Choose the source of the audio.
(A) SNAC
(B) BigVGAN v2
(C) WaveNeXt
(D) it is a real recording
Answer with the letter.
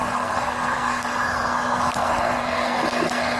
A